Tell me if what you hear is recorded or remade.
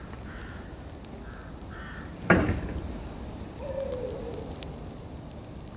recorded